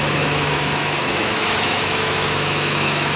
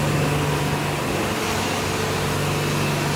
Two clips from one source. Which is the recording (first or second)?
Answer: second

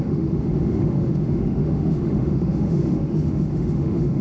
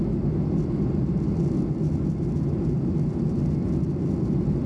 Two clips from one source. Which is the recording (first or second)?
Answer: second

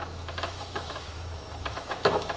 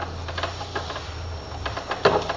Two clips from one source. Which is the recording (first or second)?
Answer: second